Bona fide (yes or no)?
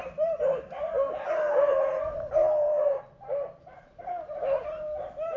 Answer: yes